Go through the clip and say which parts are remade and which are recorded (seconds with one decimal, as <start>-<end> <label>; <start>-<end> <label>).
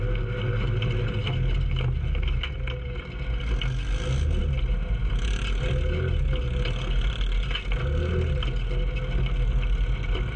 0.0-10.4 recorded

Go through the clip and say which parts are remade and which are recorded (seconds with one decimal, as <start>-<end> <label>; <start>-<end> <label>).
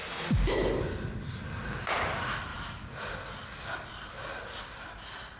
0.0-5.4 recorded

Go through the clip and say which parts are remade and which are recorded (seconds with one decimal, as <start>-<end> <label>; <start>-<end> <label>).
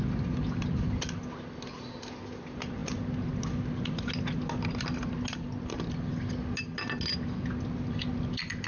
0.0-8.7 recorded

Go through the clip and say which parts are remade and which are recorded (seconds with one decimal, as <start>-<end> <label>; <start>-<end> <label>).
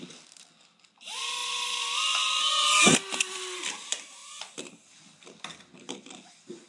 0.0-4.2 recorded; 4.2-5.2 remade; 5.2-6.7 recorded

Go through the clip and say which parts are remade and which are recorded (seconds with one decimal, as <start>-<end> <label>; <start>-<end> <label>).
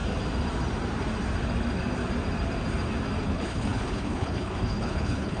0.0-3.2 recorded; 3.2-5.4 remade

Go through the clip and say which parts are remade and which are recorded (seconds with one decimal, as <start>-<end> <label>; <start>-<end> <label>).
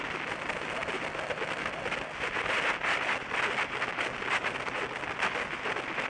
0.0-6.1 recorded